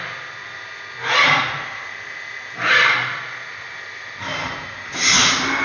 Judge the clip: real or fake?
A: real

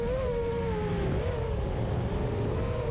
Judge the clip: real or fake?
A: real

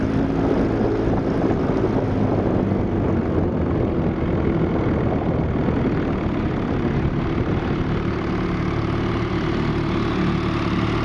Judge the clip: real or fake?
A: real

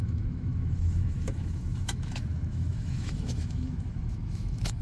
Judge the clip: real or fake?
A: fake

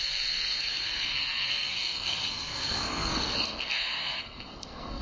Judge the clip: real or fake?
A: fake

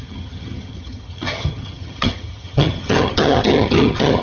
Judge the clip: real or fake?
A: fake